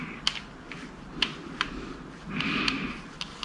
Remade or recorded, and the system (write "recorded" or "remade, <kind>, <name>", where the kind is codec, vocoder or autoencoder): recorded